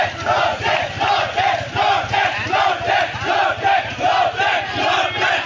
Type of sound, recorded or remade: recorded